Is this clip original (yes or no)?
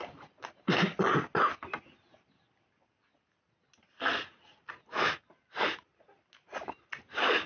yes